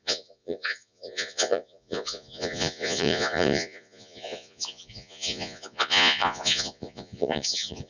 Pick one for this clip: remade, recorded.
remade